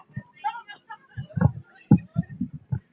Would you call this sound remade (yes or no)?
no